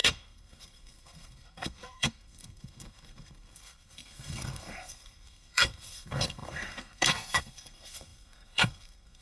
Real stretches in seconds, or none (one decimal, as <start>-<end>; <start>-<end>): none